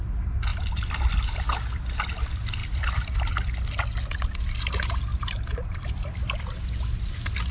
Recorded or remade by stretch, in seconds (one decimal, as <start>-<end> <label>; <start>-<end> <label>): 0.0-2.6 recorded; 2.6-3.5 remade; 3.5-5.1 recorded; 5.1-6.4 remade; 6.4-7.5 recorded